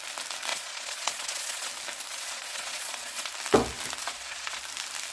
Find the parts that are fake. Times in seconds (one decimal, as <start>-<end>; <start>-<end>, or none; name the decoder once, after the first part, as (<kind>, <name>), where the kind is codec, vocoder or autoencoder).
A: 0.5-1.7 (vocoder, Vocos); 2.1-3.3; 4.0-4.6